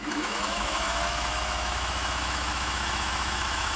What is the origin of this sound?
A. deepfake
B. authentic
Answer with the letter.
A